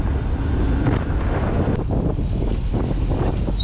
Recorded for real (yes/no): yes